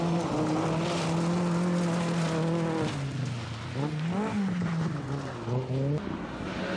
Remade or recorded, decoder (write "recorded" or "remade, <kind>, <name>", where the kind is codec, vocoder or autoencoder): recorded